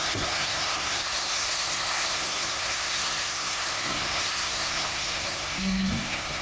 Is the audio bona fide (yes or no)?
no